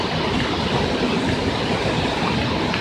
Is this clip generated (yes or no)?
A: no